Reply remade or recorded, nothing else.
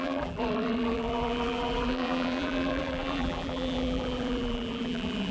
remade